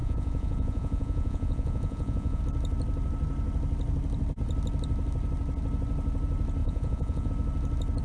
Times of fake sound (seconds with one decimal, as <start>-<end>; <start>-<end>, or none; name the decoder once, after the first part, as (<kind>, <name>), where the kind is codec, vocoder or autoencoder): 0.0-2.4 (vocoder, Vocos); 6.6-7.3